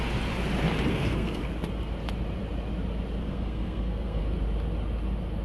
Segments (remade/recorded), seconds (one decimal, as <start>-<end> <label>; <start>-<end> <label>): 0.0-0.9 recorded; 0.9-1.4 remade; 1.4-3.2 recorded; 3.2-4.2 remade; 4.2-5.4 recorded